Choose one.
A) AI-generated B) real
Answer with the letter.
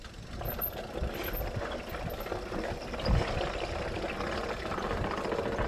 B